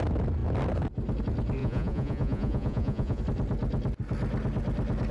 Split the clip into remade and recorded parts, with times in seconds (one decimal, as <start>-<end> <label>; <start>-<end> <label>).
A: 0.0-1.6 recorded; 1.6-3.2 remade; 3.2-5.1 recorded